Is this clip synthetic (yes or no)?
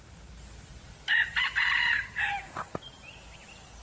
no